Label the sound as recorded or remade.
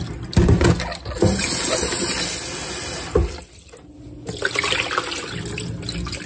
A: recorded